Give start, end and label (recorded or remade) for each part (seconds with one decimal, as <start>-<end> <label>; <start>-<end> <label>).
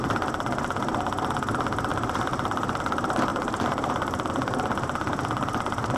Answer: 0.0-1.9 recorded; 1.9-2.8 remade; 2.8-3.3 recorded; 3.3-4.3 remade; 4.3-6.0 recorded